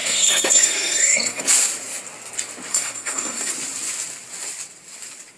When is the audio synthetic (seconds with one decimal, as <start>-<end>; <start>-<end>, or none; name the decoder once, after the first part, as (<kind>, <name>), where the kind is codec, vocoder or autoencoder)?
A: 0.0-1.4 (codec, SNAC); 2.7-3.5